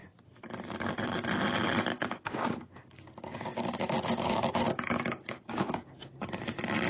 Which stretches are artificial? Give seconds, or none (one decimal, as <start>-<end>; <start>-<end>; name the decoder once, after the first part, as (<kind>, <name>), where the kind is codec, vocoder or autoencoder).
1.9-6.0 (codec, DAC)